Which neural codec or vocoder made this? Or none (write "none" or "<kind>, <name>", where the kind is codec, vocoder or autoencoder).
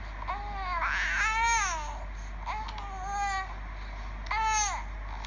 none